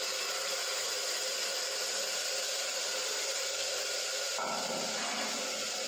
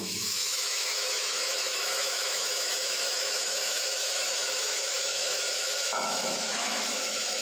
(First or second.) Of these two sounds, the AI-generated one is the second